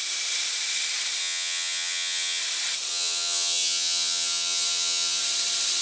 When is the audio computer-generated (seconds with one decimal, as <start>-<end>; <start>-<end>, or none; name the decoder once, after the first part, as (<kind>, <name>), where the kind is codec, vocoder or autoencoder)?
1.2-2.4 (vocoder, HiFi-GAN); 2.9-5.2

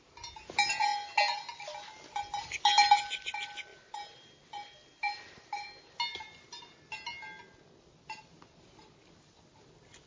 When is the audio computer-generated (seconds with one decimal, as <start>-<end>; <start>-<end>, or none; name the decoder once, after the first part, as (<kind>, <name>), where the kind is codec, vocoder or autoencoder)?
none

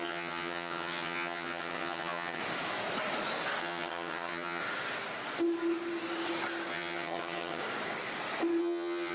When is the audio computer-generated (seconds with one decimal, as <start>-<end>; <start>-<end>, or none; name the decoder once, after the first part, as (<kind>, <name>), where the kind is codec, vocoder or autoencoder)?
0.0-2.4 (vocoder, HiFi-GAN); 3.6-4.6; 6.7-7.6; 8.6-9.1

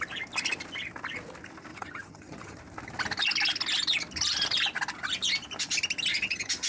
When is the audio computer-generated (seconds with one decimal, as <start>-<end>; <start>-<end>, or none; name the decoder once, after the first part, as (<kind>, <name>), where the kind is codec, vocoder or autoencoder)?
1.7-2.6 (vocoder, HiFi-GAN); 6.1-6.7

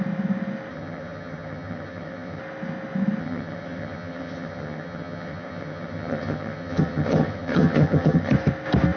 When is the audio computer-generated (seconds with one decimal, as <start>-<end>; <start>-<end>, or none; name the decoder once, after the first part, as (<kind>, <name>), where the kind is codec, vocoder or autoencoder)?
0.7-2.4 (vocoder, HiFi-GAN); 3.2-8.3

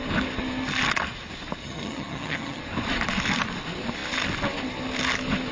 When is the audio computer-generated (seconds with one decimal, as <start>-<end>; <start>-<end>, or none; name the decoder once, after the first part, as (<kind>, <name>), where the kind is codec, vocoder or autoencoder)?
1.6-2.6 (vocoder, HiFi-GAN)

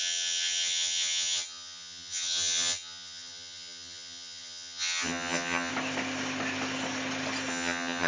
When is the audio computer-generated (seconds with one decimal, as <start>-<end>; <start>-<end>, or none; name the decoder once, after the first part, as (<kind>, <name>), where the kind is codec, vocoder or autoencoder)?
0.0-5.7 (vocoder, HiFi-GAN); 7.5-8.1